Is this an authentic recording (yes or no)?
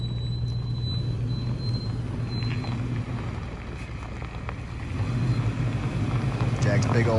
yes